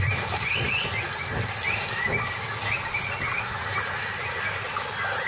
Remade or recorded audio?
recorded